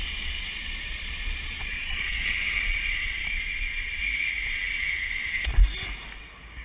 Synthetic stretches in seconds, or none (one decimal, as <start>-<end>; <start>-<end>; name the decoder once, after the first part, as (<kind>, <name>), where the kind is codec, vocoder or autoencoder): 0.0-4.0 (vocoder, Vocos); 4.4-5.4